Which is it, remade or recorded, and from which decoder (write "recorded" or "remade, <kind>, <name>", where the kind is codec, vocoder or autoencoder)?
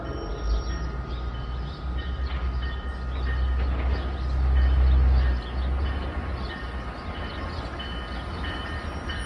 recorded